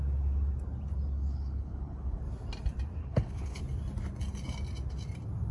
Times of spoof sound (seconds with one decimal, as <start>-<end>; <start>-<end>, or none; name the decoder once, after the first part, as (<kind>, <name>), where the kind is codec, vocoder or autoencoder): 1.3-2.2 (codec, HILCodec); 3.0-3.6